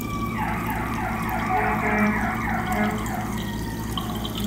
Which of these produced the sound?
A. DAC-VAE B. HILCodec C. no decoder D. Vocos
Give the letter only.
C